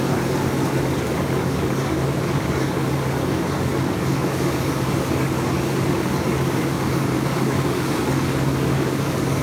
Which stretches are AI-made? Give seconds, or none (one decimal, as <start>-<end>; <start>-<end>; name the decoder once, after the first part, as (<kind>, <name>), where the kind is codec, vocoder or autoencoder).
0.0-9.4 (codec, DAC)